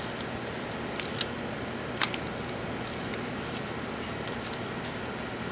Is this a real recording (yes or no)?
yes